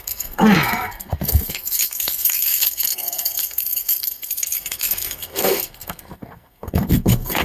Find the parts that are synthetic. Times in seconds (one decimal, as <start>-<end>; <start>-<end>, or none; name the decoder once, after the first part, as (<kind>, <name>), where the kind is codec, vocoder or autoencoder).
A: 0.0-7.4 (codec, SNAC)